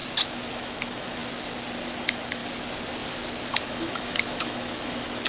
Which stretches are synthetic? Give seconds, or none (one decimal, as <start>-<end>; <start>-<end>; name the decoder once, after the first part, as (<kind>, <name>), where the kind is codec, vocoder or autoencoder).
0.5-1.2 (autoencoder, DAC-VAE); 2.0-2.4; 3.5-5.3